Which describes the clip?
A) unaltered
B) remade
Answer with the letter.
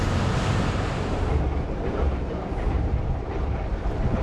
B